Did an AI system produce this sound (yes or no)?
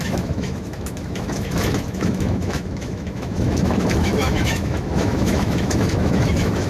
yes